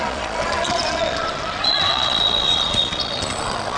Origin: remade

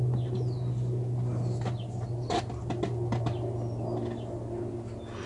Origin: recorded